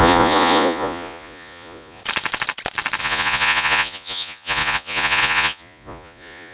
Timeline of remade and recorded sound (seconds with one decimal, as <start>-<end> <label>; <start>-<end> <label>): 0.0-2.0 remade; 2.0-3.0 recorded; 3.0-6.5 remade